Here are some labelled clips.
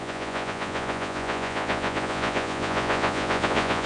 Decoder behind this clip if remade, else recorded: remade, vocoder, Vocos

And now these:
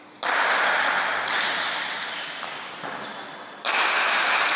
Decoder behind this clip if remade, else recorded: recorded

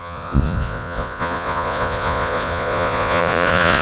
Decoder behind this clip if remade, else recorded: remade, vocoder, Vocos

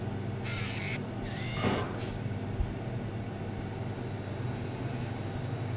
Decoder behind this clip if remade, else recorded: recorded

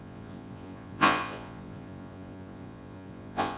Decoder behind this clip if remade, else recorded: remade, vocoder, Vocos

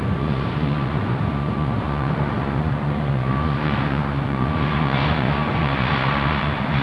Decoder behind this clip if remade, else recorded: remade, vocoder, Vocos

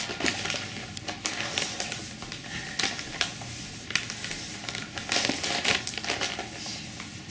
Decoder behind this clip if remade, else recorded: recorded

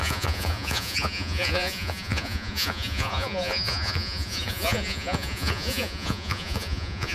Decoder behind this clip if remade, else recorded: remade, vocoder, Vocos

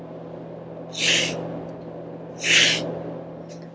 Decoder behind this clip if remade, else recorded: recorded